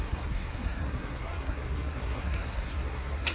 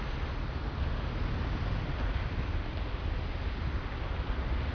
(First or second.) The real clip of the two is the second